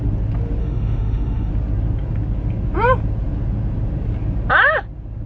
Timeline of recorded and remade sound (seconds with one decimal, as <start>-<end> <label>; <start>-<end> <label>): 0.0-0.6 recorded; 0.6-1.5 remade; 1.5-5.3 recorded